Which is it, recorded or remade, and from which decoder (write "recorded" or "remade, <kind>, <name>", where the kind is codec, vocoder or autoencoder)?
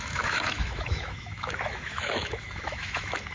remade, autoencoder, DAC-VAE